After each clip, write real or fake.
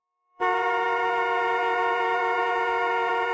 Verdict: fake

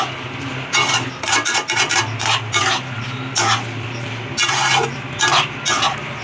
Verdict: real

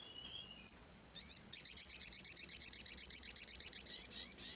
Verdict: fake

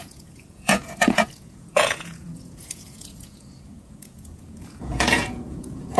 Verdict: fake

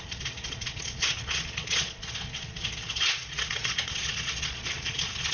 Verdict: fake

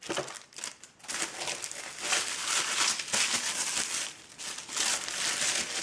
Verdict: real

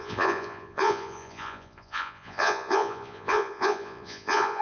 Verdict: fake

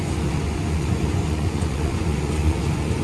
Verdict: fake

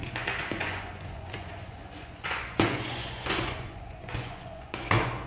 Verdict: fake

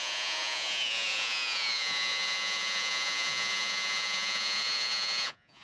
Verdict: fake